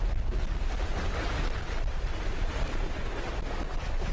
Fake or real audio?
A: real